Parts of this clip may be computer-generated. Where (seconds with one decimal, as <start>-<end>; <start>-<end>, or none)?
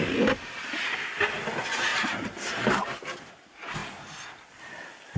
1.9-3.3